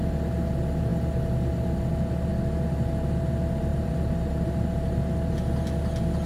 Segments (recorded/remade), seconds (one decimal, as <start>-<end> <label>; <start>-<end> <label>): 0.0-3.7 recorded; 3.7-5.0 remade; 5.0-6.3 recorded